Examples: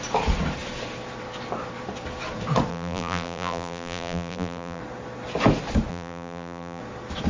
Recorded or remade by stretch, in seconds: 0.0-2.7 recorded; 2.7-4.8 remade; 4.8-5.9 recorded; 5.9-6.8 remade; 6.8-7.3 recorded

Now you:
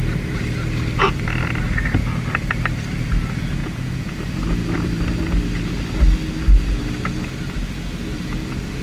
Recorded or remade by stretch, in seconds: 0.0-3.6 recorded; 3.6-4.2 remade; 4.2-8.8 recorded